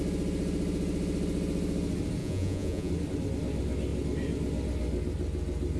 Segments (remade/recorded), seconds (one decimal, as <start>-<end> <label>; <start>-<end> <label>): 0.0-2.2 recorded; 2.2-2.9 remade; 2.9-5.8 recorded